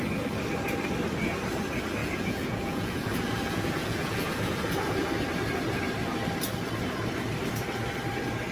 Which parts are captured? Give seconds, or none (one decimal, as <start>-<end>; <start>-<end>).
0.0-2.0; 5.1-8.5